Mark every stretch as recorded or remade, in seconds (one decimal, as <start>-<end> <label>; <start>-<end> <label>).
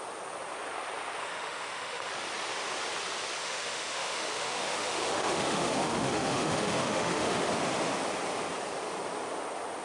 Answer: 0.0-1.2 recorded; 1.2-2.1 remade; 2.1-3.4 recorded; 3.4-7.5 remade; 7.5-9.8 recorded